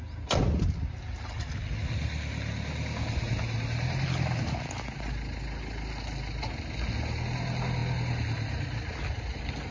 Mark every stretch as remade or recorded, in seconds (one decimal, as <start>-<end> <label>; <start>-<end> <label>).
0.0-9.7 recorded